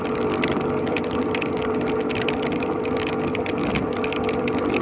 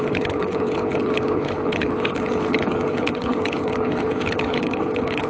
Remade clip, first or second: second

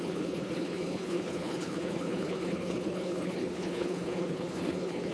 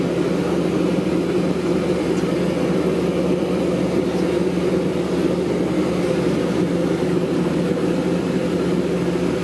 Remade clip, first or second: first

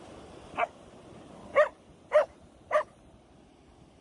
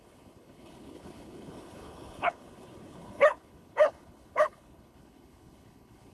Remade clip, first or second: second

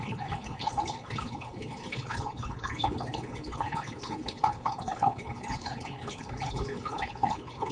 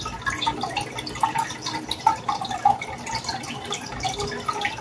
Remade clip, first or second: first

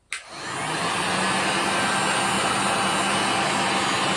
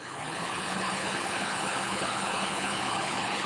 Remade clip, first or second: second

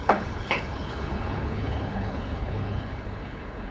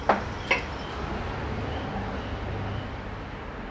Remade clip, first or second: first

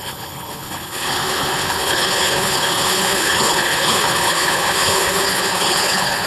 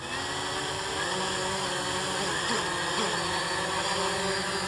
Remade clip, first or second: first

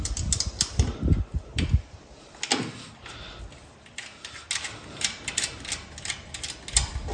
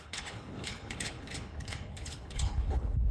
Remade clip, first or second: second